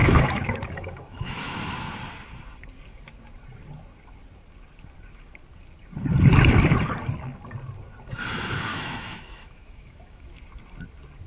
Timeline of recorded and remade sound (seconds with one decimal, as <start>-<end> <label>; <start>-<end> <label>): 0.0-1.7 remade; 1.7-8.7 recorded; 8.7-10.3 remade; 10.3-11.3 recorded